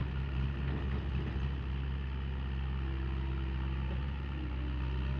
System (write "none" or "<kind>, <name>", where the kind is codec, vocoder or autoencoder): none